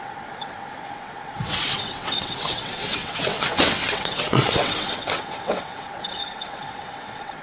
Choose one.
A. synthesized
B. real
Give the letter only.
A